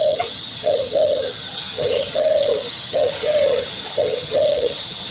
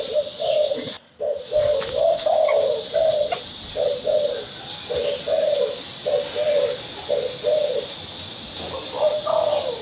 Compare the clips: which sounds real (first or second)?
second